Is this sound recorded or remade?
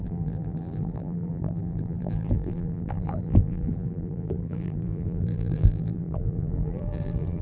remade